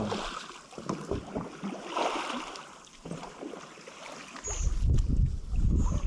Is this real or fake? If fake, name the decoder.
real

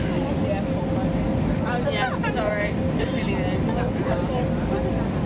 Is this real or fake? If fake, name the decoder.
real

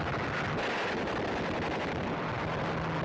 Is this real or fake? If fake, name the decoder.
real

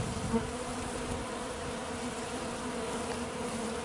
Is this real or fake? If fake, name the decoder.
real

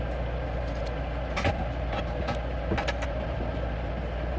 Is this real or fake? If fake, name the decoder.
real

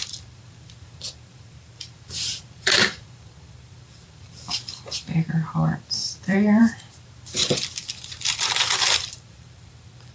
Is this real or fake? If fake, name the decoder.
fake, vocoder, BigVGAN v2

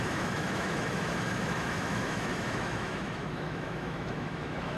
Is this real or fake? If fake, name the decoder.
fake, autoencoder, DAC-VAE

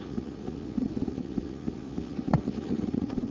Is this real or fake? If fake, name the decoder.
fake, vocoder, Vocos